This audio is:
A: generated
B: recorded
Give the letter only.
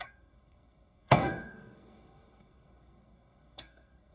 A